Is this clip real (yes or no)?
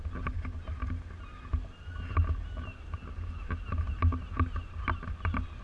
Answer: yes